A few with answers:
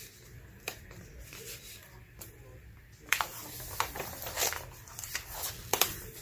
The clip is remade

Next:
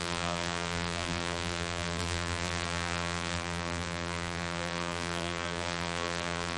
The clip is remade